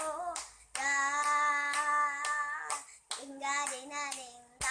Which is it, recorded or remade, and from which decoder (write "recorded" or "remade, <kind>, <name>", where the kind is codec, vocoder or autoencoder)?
recorded